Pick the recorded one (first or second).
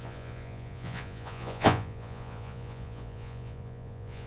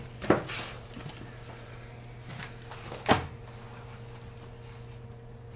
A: second